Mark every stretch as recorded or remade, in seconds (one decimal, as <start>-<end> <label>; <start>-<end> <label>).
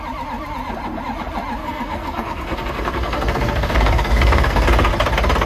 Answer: 0.0-1.6 recorded; 1.6-4.9 remade; 4.9-5.5 recorded